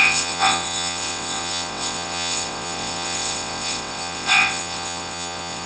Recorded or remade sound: remade